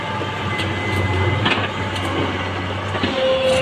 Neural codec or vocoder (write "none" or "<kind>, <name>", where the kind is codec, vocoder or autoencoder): none